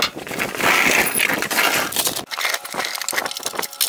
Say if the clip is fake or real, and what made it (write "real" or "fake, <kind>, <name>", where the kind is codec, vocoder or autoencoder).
real